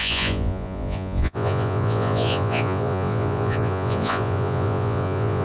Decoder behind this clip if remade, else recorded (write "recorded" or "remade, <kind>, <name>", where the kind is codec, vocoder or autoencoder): remade, vocoder, Vocos